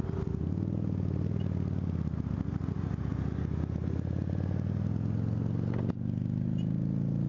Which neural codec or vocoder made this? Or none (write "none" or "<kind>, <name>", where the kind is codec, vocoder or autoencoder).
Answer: none